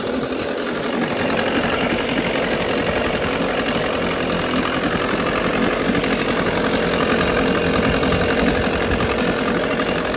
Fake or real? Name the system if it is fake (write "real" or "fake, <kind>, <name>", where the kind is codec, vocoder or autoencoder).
real